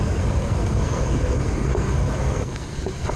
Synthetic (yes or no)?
yes